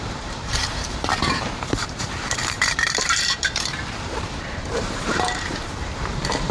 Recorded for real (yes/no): no